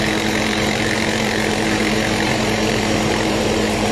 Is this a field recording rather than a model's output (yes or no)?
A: no